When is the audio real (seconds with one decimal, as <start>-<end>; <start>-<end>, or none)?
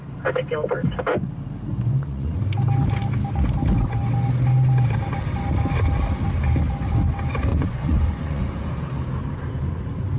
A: 0.0-1.7; 2.4-7.5; 8.4-10.2